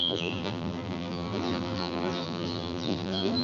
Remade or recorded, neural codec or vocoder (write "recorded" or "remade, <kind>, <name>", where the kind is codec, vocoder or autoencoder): remade, vocoder, BigVGAN v2